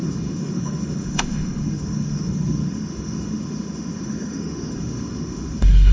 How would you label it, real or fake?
fake